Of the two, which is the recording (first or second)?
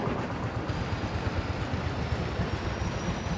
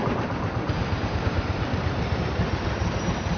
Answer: first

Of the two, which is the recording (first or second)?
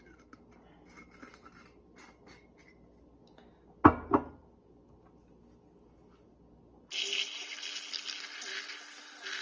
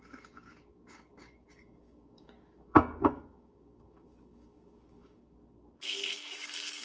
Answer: first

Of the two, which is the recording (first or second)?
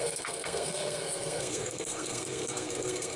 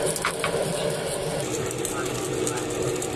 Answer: second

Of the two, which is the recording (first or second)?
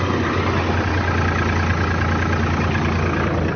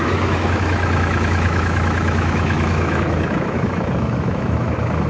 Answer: first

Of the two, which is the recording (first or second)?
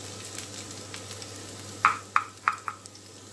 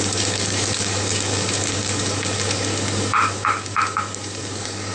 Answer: first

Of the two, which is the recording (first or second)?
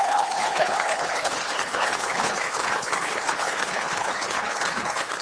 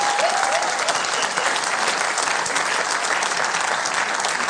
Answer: second